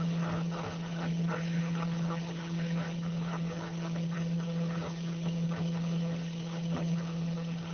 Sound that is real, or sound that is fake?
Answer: fake